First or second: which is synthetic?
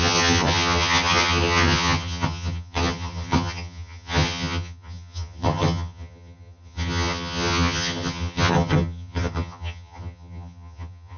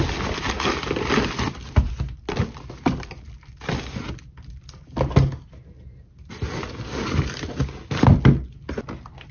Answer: first